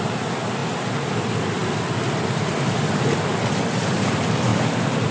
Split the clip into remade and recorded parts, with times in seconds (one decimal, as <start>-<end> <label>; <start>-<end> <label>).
0.0-5.1 recorded